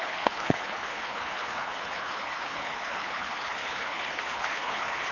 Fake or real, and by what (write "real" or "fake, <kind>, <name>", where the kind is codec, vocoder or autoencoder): fake, codec, HILCodec